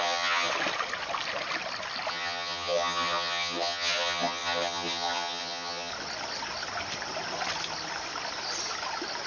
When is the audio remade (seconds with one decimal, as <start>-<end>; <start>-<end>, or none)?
0.0-0.5; 2.1-5.9

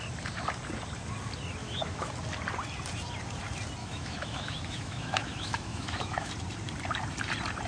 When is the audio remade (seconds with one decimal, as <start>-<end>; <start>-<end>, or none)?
1.6-2.1; 3.8-6.3

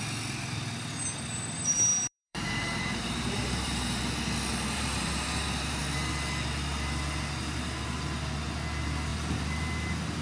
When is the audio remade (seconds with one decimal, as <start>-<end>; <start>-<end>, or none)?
1.9-4.0; 4.5-5.8; 9.1-9.7

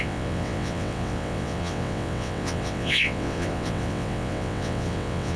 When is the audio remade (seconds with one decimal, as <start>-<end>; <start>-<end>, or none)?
0.0-5.4

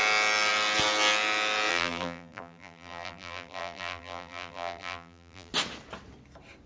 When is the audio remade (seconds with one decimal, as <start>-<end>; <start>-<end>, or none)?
1.7-5.5

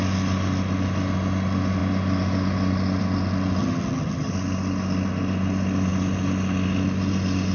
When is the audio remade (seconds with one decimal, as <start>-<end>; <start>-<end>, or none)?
3.6-4.3